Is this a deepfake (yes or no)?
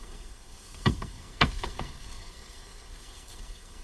yes